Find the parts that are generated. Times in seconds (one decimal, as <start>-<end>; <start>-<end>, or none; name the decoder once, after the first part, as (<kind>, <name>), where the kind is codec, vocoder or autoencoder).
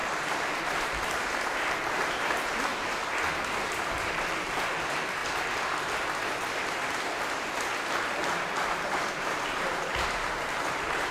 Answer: 0.0-2.7 (vocoder, BigVGAN v2); 3.3-5.2; 9.1-11.1